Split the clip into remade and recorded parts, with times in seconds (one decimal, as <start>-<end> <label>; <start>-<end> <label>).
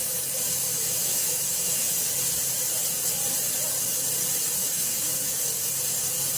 0.0-0.7 recorded; 0.7-1.9 remade; 1.9-4.6 recorded; 4.6-5.4 remade; 5.4-6.4 recorded